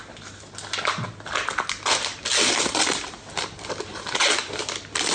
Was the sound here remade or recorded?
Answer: recorded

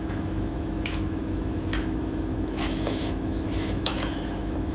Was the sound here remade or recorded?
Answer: remade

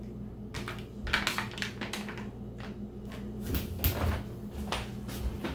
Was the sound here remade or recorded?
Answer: recorded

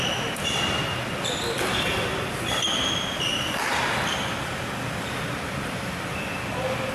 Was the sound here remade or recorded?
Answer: recorded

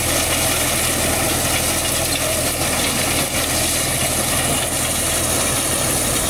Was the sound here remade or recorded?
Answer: recorded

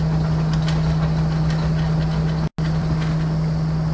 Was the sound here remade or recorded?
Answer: recorded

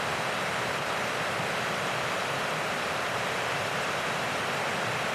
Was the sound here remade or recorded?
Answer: recorded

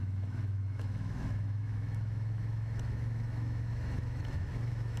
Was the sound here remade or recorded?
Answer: remade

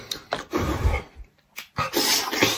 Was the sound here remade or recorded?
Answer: recorded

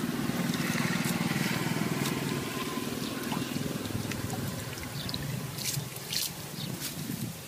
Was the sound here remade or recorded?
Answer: recorded